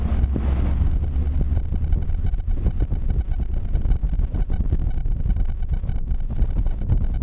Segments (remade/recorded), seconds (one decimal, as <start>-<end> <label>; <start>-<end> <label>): 0.0-4.0 recorded; 4.0-4.7 remade; 4.7-7.2 recorded